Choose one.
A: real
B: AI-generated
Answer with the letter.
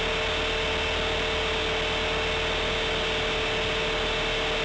A